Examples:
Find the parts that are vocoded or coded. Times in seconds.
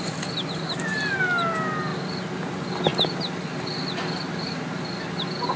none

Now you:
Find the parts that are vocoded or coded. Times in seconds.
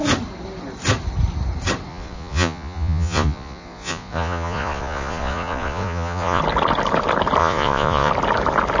1.9-6.4 (vocoder, Vocos); 7.4-8.1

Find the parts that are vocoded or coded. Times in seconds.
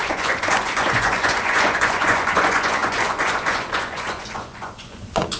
0.0-5.4 (vocoder, Vocos)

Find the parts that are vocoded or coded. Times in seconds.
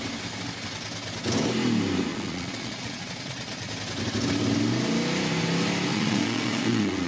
2.1-3.7 (vocoder, Vocos); 5.9-7.1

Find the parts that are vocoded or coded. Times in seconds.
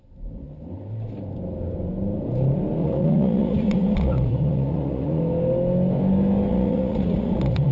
2.8-5.2 (vocoder, Vocos); 6.5-7.7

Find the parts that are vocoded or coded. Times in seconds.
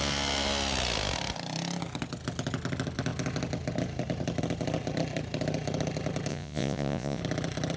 6.3-7.2 (vocoder, Vocos)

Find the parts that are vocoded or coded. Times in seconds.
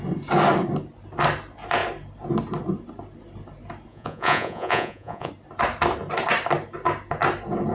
3.9-5.3 (vocoder, Vocos)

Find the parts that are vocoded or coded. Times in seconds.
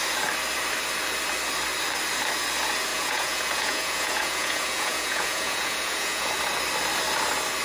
2.9-6.3 (vocoder, Vocos)